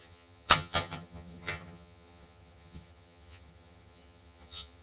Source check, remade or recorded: remade